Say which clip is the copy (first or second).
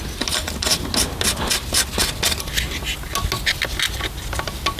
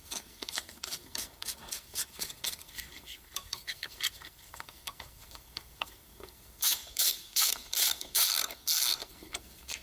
second